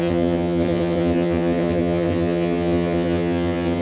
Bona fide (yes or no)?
no